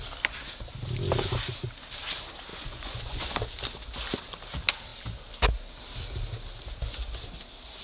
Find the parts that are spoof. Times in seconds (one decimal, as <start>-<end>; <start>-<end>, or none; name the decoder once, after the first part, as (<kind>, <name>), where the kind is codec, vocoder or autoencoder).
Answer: 2.5-3.4 (vocoder, Vocos)